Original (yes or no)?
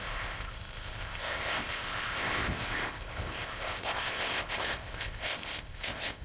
no